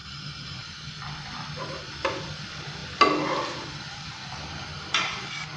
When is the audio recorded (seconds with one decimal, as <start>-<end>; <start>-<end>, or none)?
0.0-5.6